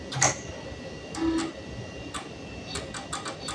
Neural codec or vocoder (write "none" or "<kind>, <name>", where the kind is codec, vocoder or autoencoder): none